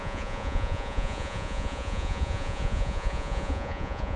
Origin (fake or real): fake